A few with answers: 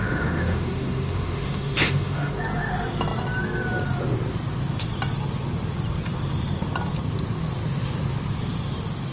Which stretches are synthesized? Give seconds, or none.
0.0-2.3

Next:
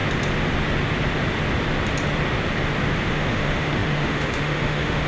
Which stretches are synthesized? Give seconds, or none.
3.1-5.1

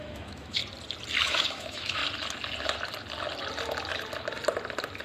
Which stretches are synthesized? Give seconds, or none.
0.0-0.6; 1.2-2.0